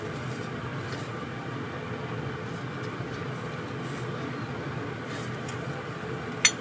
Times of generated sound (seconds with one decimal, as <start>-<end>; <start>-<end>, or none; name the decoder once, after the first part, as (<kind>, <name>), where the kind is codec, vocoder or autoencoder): none

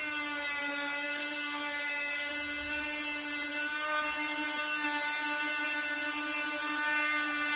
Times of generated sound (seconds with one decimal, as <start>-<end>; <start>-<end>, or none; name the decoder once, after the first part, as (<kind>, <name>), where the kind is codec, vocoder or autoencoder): 0.6-2.3 (codec, DAC)

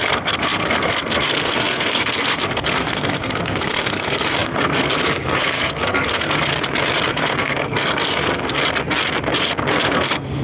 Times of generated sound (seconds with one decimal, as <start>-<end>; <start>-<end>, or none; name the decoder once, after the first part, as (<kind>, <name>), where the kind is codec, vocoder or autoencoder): 0.0-6.5 (codec, SNAC); 7.1-8.6; 9.7-10.4